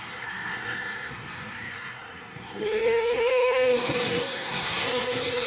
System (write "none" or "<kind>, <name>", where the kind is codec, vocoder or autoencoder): codec, SNAC